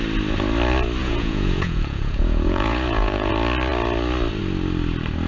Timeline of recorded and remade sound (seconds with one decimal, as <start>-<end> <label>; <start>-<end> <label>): 0.0-1.0 recorded; 1.0-3.3 remade; 3.3-5.3 recorded